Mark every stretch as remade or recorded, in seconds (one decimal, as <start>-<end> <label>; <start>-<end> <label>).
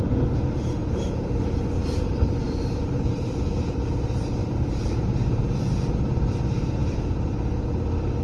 0.0-0.8 recorded; 0.8-3.4 remade; 3.4-4.4 recorded; 4.4-5.7 remade; 5.7-8.2 recorded